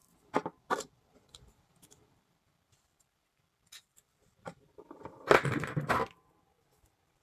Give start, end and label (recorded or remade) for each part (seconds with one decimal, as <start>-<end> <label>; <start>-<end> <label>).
0.0-7.2 recorded